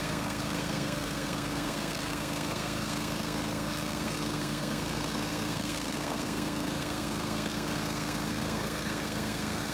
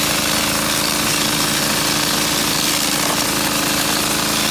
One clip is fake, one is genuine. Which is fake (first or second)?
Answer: first